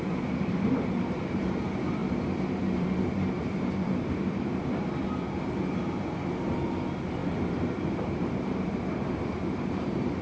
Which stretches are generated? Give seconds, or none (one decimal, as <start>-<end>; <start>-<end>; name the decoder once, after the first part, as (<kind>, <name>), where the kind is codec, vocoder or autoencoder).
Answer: 0.0-10.2 (vocoder, BigVGAN v2)